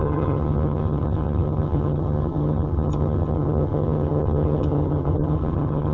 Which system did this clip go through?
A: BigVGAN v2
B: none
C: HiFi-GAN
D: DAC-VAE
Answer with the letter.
C